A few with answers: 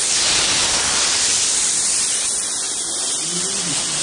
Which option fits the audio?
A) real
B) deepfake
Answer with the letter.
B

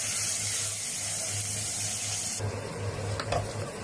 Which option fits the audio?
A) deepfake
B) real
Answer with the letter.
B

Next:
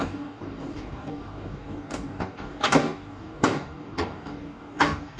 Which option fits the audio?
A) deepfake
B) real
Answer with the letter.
A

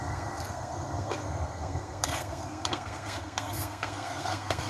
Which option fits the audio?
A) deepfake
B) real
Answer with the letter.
A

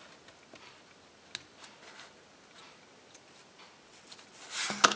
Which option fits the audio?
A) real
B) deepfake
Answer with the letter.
A